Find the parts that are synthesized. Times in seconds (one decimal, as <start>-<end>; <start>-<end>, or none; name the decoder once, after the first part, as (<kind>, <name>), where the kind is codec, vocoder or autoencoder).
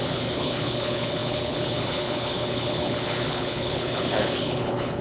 0.0-5.0 (codec, HILCodec)